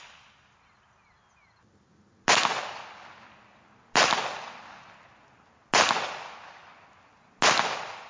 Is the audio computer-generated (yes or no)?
no